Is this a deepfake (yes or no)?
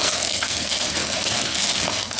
yes